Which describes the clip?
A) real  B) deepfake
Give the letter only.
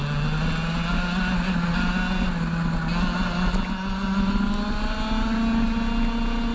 A